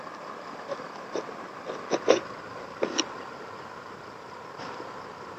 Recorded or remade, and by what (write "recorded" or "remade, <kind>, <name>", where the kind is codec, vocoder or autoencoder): recorded